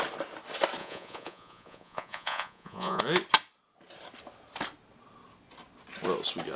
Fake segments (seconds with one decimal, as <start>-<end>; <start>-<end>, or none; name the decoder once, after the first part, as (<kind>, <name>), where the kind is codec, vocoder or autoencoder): 0.8-3.0 (vocoder, Vocos)